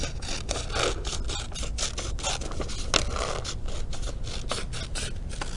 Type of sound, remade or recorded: recorded